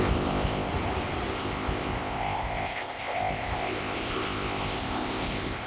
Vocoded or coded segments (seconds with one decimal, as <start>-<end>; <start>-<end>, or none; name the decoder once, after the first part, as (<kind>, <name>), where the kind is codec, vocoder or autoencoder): 0.0-0.7 (codec, ZipCodec); 1.3-5.7